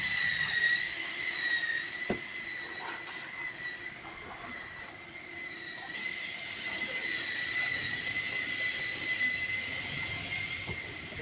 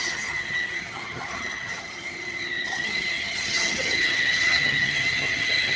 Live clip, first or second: first